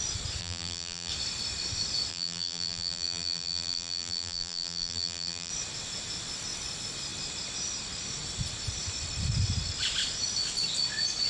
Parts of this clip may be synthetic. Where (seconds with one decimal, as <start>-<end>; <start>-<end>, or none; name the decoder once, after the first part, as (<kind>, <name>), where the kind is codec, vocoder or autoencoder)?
0.4-1.1 (vocoder, BigVGAN v2); 2.1-5.5